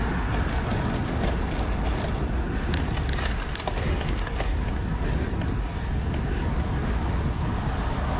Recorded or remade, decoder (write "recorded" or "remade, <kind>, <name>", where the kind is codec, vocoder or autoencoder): recorded